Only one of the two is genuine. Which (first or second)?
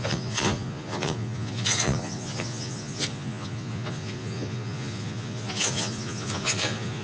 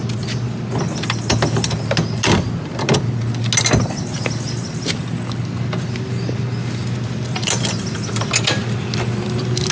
second